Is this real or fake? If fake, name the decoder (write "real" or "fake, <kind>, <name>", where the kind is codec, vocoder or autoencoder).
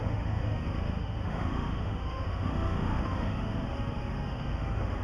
fake, autoencoder, DAC-VAE